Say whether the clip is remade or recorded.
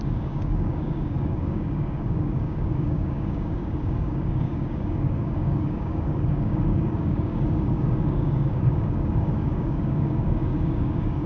remade